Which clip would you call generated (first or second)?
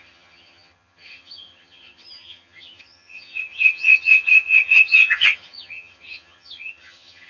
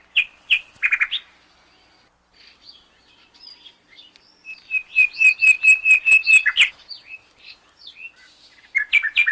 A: first